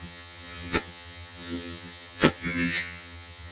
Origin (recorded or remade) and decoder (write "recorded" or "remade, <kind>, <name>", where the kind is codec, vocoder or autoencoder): remade, vocoder, HiFi-GAN